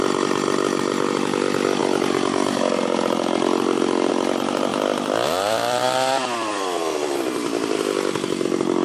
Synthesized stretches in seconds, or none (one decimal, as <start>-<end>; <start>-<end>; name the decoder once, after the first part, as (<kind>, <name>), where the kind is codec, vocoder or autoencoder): 0.0-8.8 (vocoder, BigVGAN v2)